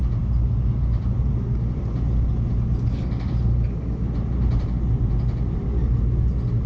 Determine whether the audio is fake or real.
real